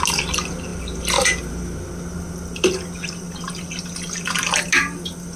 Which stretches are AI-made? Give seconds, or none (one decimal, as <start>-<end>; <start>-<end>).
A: none